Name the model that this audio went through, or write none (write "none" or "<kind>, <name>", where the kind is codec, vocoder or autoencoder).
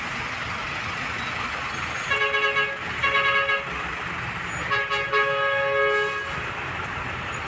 none